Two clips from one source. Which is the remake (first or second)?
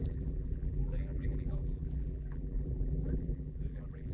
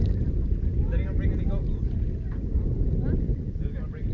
first